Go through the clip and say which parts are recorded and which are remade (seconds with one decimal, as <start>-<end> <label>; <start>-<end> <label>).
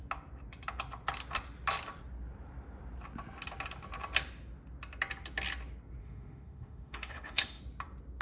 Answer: 0.0-6.0 recorded; 6.0-7.6 remade; 7.6-8.2 recorded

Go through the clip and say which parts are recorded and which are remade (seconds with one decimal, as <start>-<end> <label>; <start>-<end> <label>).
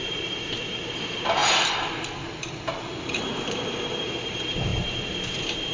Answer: 0.0-1.4 remade; 1.4-3.0 recorded; 3.0-5.7 remade